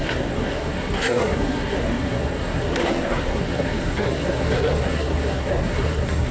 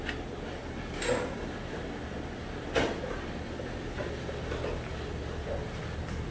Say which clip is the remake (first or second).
first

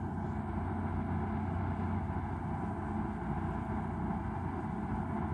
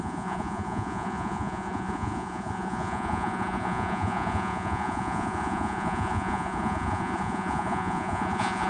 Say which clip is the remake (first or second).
second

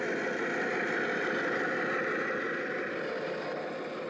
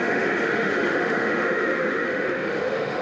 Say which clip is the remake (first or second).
second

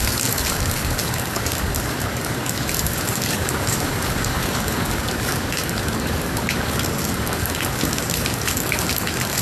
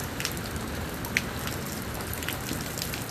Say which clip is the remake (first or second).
first